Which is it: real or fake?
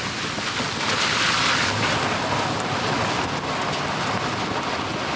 real